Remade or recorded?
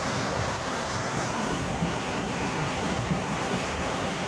remade